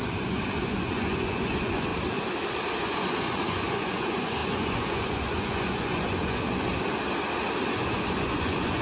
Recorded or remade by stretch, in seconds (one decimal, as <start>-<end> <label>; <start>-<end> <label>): 0.0-1.9 remade; 1.9-2.8 recorded; 2.8-6.7 remade; 6.7-7.7 recorded; 7.7-8.8 remade